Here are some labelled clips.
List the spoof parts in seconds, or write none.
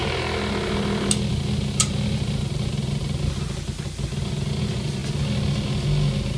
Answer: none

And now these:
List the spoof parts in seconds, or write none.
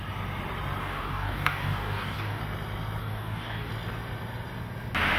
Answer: 0.8-2.4 (codec, DAC); 3.0-3.7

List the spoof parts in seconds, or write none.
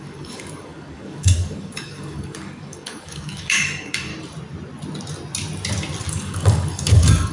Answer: 0.0-4.1 (codec, DAC); 6.1-7.3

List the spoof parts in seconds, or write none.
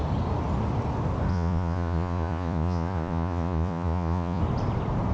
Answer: 1.3-4.4 (vocoder, Vocos)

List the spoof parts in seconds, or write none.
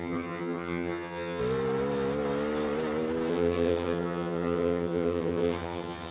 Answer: 0.0-1.4 (vocoder, HiFi-GAN); 3.3-6.1